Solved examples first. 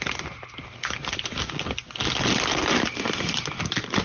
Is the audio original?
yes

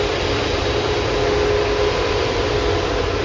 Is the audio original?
yes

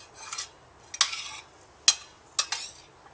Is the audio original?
yes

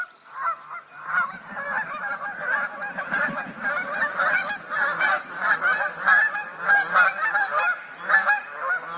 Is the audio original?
yes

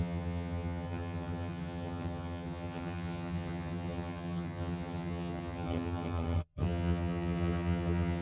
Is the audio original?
no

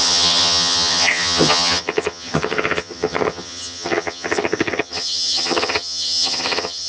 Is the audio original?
no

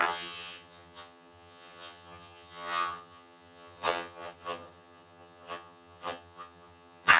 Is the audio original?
no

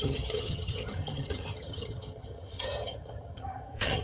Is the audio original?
no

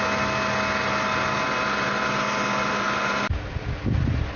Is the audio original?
yes